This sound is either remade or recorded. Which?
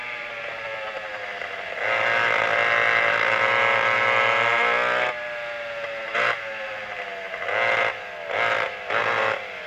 recorded